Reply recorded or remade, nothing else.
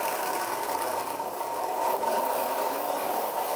remade